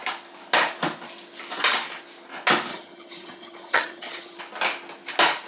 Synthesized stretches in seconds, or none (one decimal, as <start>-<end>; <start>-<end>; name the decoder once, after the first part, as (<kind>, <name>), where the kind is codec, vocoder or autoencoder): 2.7-4.4 (vocoder, HiFi-GAN)